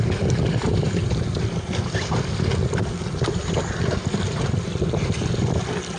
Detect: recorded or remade recorded